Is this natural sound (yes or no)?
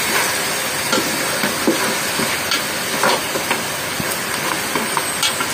yes